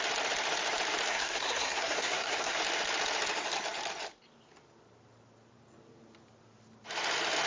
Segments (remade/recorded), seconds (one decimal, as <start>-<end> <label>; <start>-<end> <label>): 0.0-1.1 recorded; 1.1-2.6 remade; 2.6-7.5 recorded